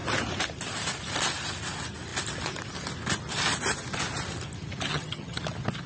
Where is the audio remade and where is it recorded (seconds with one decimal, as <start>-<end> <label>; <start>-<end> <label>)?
0.0-4.9 recorded; 4.9-5.4 remade; 5.4-5.9 recorded